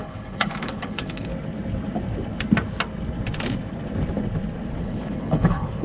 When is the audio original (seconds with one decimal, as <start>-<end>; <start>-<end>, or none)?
1.3-4.8